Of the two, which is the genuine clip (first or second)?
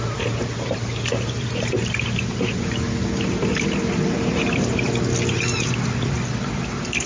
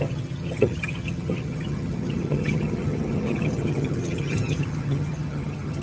first